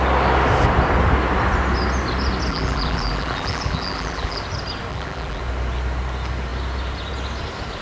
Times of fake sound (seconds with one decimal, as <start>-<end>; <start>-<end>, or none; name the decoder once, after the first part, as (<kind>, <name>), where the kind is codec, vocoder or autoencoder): 2.5-4.4 (vocoder, BigVGAN v2); 4.9-5.4